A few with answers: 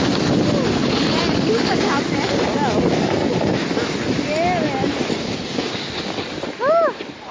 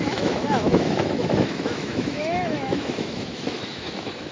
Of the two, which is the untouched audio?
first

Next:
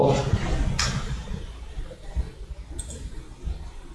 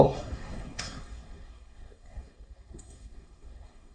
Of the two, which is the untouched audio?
first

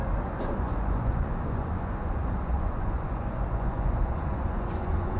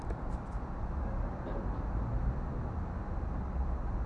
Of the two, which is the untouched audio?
second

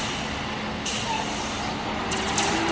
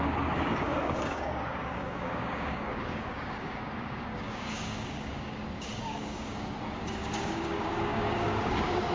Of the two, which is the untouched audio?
first